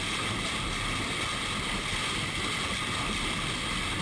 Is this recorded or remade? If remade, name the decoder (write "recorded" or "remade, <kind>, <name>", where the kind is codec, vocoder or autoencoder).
recorded